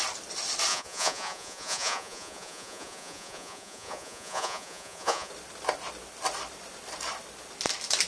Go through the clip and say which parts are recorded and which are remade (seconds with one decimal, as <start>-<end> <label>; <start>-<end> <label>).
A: 0.0-0.7 recorded; 0.7-5.3 remade; 5.3-8.1 recorded